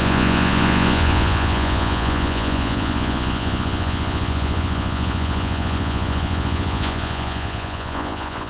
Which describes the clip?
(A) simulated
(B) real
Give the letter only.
A